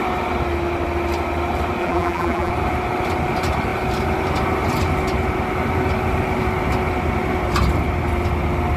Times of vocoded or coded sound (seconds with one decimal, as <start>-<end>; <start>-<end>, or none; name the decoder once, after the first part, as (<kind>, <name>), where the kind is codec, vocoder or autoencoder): 1.8-2.5 (vocoder, BigVGAN v2)